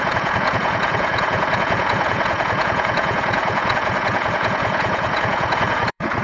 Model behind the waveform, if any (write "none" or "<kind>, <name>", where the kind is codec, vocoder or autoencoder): vocoder, Vocos